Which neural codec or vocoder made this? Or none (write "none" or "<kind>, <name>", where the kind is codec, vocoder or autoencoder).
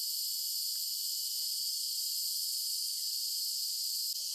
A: none